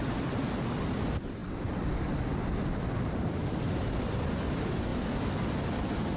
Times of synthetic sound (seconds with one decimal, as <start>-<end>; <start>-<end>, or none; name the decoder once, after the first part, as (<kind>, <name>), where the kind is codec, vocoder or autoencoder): none